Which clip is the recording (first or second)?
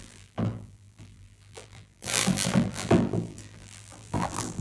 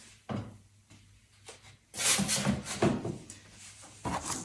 second